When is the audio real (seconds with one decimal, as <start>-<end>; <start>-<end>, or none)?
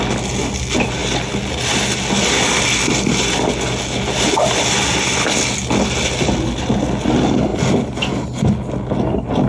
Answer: 0.0-9.5